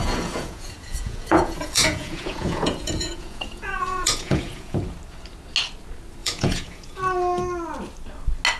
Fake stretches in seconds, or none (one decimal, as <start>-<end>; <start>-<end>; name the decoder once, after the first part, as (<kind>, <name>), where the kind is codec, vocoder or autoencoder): 0.0-4.8 (vocoder, Vocos); 6.2-7.0

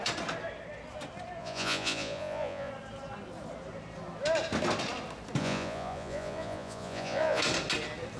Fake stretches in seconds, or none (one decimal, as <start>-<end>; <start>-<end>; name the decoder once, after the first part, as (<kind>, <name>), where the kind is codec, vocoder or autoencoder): 1.4-2.7 (vocoder, Vocos); 5.4-7.4